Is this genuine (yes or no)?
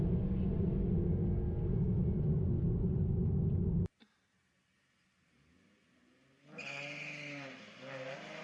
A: yes